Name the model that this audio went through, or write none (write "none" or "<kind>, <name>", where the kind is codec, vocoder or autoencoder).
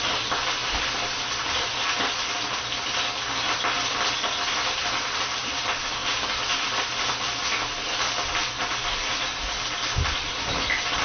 none